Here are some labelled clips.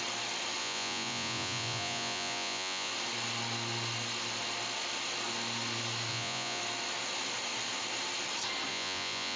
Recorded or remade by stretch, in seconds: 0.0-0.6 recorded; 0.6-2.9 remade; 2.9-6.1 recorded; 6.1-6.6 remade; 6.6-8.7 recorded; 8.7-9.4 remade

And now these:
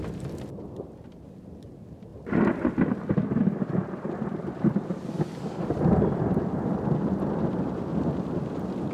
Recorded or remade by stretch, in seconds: 0.0-2.1 recorded; 2.1-4.8 remade; 4.8-8.9 recorded

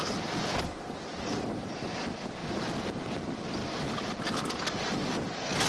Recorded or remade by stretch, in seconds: 0.0-5.7 recorded

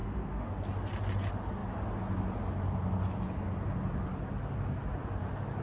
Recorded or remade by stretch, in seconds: 0.0-0.5 remade; 0.5-5.6 recorded

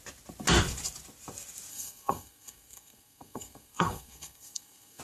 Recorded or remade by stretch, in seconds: 0.0-1.7 recorded; 1.7-5.0 remade

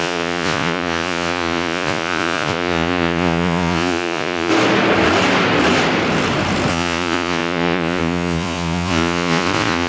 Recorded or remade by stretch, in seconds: 0.0-4.5 remade; 4.5-6.7 recorded; 6.7-9.9 remade

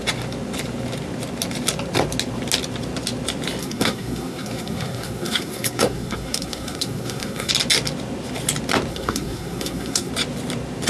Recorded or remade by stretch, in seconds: 0.0-3.6 recorded; 3.6-7.5 remade; 7.5-8.9 recorded; 8.9-10.1 remade; 10.1-10.9 recorded